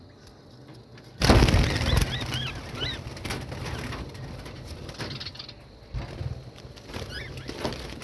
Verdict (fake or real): real